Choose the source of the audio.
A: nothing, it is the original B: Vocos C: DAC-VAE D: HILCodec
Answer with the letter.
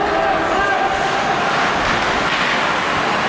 A